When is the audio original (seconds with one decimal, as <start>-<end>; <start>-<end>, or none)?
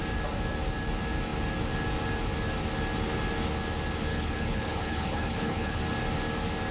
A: 0.0-4.1; 5.8-6.7